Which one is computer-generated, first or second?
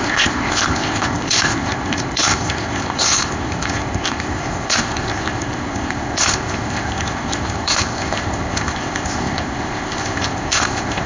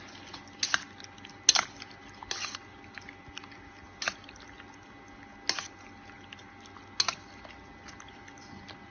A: first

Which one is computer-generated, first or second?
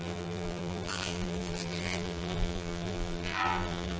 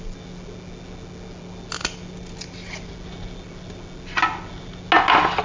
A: first